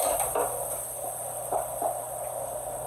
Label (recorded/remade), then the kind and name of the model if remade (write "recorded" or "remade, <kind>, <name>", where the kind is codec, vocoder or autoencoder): recorded